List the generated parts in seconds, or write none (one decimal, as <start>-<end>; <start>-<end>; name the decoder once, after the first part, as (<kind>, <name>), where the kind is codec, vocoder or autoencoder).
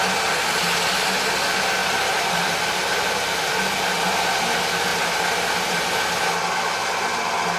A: 1.8-3.4 (vocoder, BigVGAN v2)